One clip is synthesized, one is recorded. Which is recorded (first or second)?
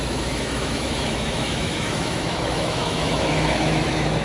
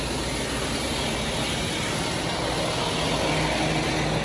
second